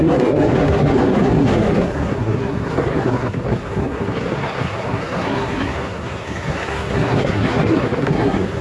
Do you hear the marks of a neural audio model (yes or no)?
yes